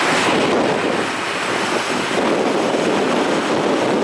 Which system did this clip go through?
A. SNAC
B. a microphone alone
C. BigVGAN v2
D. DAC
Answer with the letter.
B